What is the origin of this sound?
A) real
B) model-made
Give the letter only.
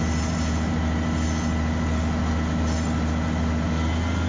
A